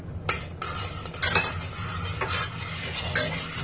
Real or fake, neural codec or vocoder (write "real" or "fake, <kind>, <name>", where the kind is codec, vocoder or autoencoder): real